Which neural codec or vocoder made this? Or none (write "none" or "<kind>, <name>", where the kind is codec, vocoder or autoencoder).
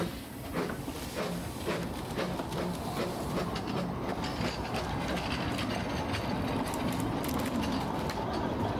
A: none